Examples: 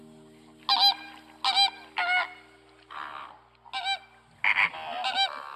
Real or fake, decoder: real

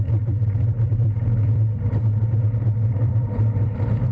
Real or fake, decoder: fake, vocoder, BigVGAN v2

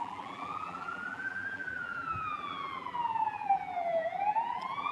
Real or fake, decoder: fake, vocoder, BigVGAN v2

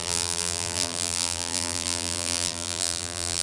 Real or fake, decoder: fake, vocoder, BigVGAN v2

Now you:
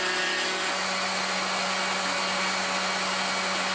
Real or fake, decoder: real